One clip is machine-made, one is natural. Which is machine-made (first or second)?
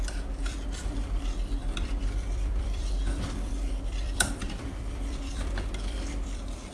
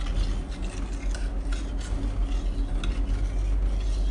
first